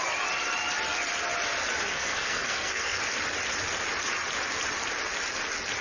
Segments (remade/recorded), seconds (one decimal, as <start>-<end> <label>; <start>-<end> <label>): 0.0-1.9 recorded; 1.9-3.0 remade; 3.0-5.8 recorded